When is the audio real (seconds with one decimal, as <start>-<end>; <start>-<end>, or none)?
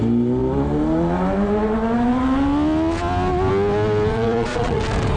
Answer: 0.0-4.1; 4.8-5.2